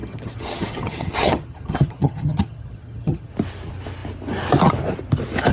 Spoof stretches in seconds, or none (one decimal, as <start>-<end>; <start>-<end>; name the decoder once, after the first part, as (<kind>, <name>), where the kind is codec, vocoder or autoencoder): 0.0-3.3 (vocoder, HiFi-GAN)